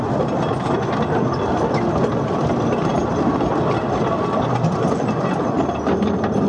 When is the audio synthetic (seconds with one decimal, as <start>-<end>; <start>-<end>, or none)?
none